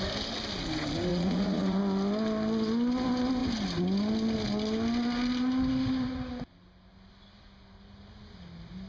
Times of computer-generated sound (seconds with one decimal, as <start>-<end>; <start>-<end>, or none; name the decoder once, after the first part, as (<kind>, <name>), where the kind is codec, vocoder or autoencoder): 1.1-1.8 (vocoder, Vocos)